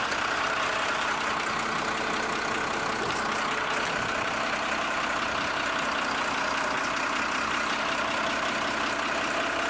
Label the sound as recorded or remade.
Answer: recorded